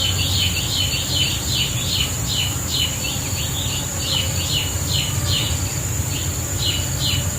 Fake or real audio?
real